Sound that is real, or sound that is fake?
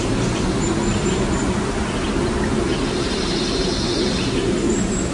real